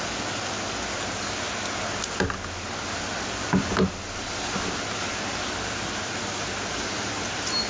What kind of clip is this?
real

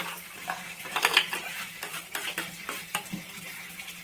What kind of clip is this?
fake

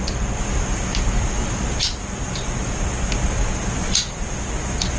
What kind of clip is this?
real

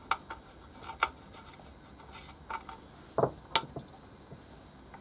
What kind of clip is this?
real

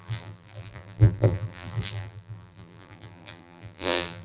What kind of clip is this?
fake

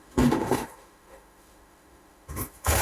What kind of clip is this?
fake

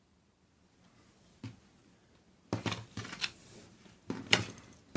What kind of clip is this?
real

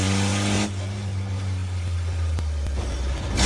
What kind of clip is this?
real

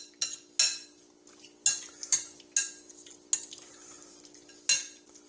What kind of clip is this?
real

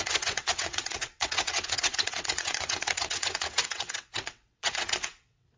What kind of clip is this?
fake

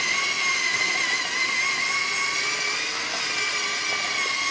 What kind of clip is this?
real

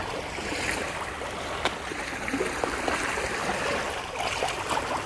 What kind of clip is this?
real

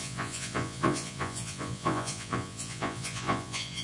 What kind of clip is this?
fake